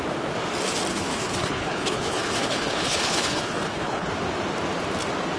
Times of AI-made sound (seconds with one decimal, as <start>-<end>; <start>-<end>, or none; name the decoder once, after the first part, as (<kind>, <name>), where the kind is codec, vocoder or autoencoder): 0.9-4.1 (codec, HILCodec)